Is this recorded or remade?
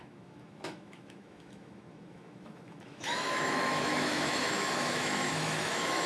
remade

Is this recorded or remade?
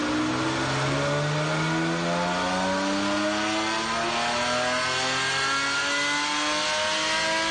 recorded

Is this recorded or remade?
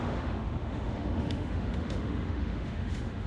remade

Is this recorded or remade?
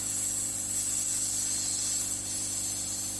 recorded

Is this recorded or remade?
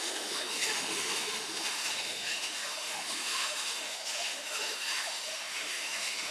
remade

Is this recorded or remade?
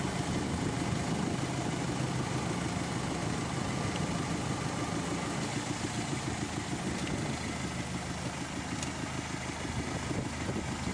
recorded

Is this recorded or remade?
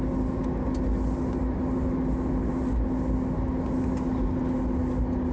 recorded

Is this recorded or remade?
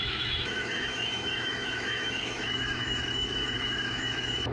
remade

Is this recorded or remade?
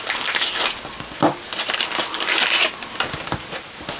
recorded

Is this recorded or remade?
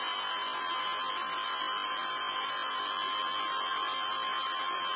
recorded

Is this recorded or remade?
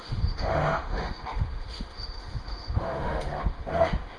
remade